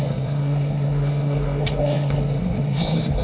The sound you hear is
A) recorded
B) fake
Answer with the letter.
B